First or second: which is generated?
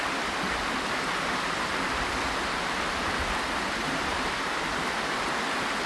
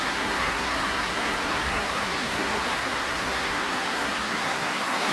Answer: second